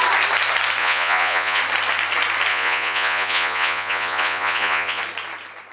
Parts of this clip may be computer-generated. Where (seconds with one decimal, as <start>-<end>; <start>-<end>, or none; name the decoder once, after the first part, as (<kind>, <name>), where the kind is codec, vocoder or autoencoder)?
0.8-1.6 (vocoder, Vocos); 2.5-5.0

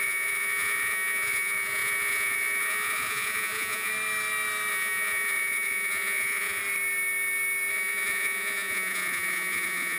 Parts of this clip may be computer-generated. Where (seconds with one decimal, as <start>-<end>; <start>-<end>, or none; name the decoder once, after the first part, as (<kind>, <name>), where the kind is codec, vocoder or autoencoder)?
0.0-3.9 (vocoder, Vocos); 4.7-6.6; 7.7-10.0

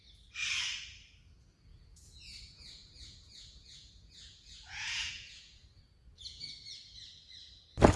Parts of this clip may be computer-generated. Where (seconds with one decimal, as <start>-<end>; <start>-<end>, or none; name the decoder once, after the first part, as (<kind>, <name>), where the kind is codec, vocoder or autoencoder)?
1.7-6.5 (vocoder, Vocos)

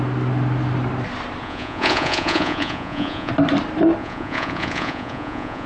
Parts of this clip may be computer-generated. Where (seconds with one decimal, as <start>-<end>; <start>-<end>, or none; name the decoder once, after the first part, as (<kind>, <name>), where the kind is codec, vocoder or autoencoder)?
1.4-3.3 (vocoder, Vocos); 4.0-5.7

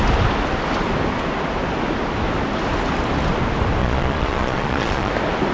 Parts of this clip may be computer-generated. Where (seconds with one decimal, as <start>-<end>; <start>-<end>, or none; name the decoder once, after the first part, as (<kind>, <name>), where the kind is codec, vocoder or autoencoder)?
3.8-5.1 (vocoder, Vocos)

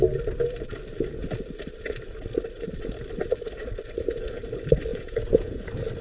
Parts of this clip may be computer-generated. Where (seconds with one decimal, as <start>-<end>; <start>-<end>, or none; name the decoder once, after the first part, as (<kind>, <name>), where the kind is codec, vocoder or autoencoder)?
4.9-5.6 (vocoder, Vocos)